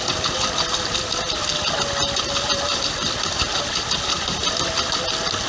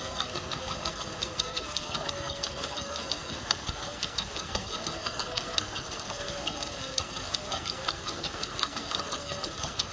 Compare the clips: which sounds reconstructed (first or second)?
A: second